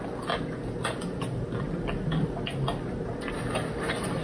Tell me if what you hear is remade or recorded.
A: recorded